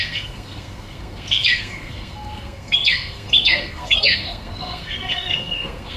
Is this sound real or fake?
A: fake